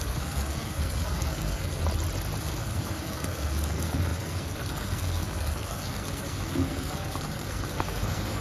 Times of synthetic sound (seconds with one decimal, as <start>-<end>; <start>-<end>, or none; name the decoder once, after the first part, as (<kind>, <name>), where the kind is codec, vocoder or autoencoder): 0.0-1.8 (codec, SNAC); 2.4-8.4